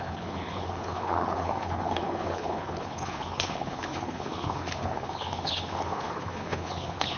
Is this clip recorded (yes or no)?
no